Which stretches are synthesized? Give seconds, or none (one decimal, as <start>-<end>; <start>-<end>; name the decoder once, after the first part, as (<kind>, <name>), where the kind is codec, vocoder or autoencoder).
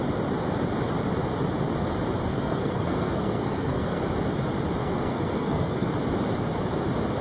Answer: 2.3-4.0 (codec, SNAC); 4.8-5.9